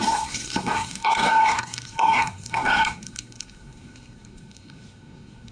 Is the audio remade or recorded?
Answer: remade